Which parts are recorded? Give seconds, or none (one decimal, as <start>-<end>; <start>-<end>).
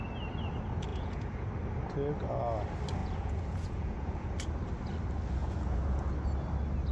0.0-0.9; 1.5-3.0; 4.3-5.4; 6.1-6.9